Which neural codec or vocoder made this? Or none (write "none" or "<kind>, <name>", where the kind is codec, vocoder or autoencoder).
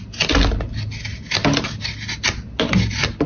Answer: none